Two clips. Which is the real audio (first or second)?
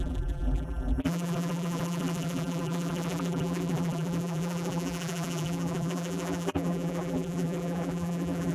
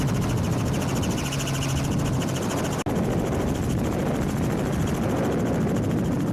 second